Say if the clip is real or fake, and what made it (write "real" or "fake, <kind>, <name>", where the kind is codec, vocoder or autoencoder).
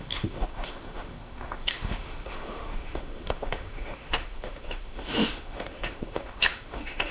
fake, autoencoder, DAC-VAE